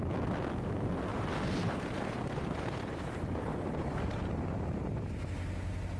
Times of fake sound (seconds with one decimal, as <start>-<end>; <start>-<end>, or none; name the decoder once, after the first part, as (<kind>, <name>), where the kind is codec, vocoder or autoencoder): 1.1-4.2 (vocoder, BigVGAN v2)